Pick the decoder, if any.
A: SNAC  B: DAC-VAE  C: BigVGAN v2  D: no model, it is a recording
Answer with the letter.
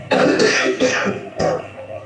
A